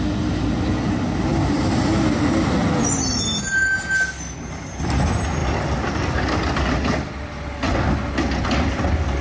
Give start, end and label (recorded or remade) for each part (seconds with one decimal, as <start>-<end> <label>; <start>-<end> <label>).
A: 0.0-9.2 recorded